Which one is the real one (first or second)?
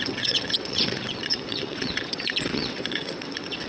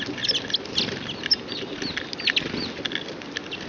second